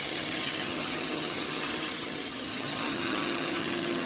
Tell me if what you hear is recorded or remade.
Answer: remade